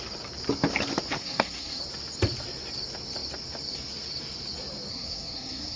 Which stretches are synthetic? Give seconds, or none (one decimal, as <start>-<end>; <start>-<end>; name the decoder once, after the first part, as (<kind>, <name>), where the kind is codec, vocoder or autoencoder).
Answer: 1.2-1.8 (codec, SNAC); 4.9-5.8